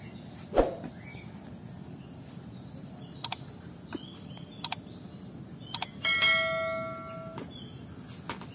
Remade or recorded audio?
recorded